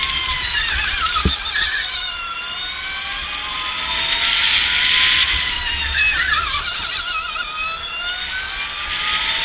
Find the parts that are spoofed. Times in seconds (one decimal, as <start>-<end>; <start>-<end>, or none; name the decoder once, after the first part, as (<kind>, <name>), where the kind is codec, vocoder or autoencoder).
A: none